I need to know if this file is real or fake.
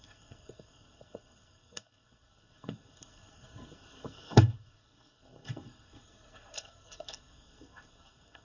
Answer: fake